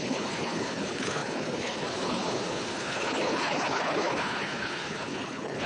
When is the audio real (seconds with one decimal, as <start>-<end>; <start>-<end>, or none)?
none